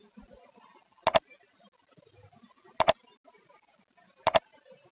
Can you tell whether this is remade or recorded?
recorded